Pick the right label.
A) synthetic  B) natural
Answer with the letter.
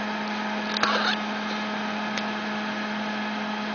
B